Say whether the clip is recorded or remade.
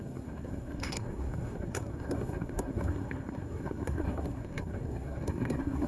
remade